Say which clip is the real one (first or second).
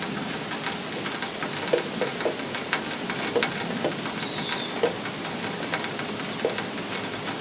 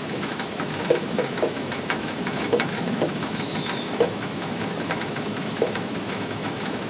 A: first